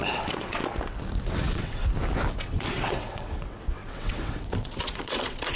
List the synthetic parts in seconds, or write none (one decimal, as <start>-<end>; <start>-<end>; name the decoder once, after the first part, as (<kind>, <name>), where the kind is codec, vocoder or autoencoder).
0.0-0.6 (vocoder, WaveNeXt); 1.2-1.8; 2.4-5.6